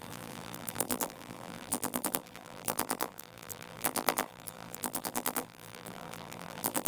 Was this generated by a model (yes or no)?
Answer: yes